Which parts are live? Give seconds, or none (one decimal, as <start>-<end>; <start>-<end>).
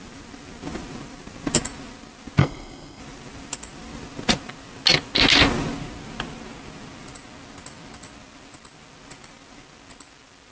0.0-2.4; 3.0-10.5